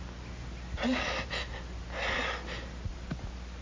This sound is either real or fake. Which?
real